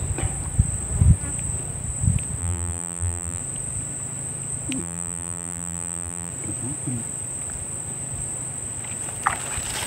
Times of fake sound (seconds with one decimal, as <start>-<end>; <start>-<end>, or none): 2.4-3.4; 4.8-6.3